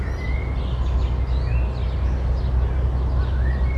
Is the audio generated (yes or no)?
no